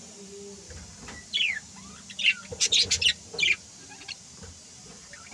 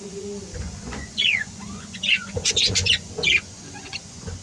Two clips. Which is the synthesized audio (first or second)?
second